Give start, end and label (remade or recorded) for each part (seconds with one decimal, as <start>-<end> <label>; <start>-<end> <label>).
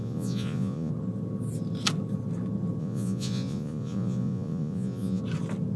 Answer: 0.0-0.9 remade; 0.9-2.8 recorded; 2.8-5.2 remade; 5.2-5.8 recorded